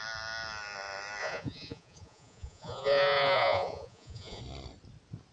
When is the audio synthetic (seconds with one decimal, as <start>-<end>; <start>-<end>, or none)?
1.2-4.4

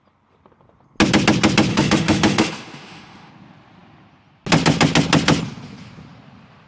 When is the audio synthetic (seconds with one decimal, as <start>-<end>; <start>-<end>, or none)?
1.7-3.3

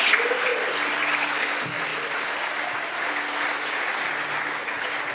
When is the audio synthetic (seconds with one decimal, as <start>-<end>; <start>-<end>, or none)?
none

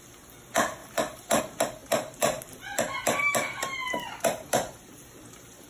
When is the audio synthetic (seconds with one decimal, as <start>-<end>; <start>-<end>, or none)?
0.8-1.4; 1.8-2.4; 3.8-5.7

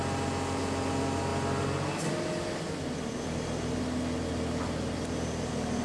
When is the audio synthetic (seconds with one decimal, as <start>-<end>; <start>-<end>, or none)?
none

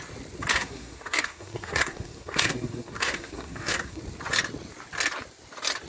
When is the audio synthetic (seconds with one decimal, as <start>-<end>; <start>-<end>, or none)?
0.5-4.0

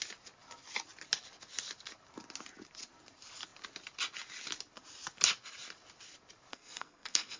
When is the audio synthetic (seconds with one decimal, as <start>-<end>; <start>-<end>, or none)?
6.5-7.4

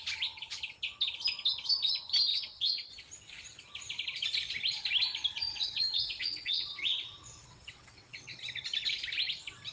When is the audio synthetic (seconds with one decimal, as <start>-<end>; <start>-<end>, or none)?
2.3-2.9; 5.5-8.4